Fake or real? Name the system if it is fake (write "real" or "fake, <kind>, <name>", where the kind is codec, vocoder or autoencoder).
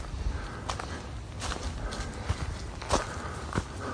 real